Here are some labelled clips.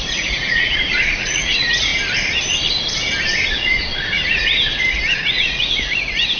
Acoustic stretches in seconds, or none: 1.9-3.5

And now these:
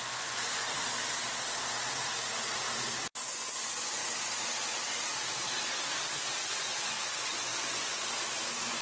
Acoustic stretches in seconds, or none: 0.8-3.1; 4.0-6.4

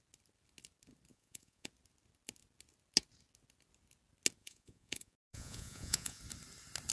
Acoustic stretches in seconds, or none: 0.0-1.1; 1.7-4.4; 6.2-6.9

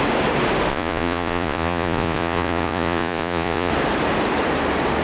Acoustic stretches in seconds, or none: 0.0-0.7; 3.7-5.0

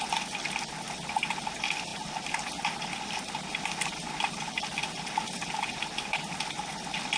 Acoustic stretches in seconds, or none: 0.0-7.2

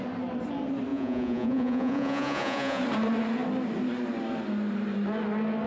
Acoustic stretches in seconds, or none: 0.0-0.9; 2.8-5.7

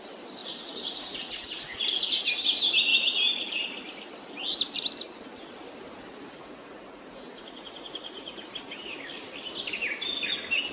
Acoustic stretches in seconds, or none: 0.0-0.4; 2.2-6.1; 8.4-10.7